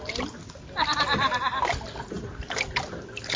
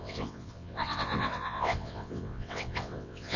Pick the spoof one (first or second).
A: second